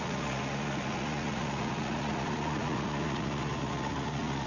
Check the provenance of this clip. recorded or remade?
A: remade